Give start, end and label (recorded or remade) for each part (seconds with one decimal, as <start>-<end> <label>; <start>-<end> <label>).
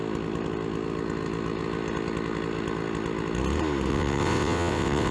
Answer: 0.0-3.9 recorded; 3.9-5.1 remade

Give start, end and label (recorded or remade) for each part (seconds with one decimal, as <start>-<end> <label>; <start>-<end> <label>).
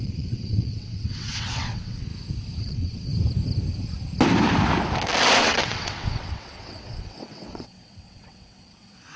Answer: 0.0-2.1 remade; 2.1-2.6 recorded; 2.6-3.1 remade; 3.1-5.4 recorded; 5.4-9.2 remade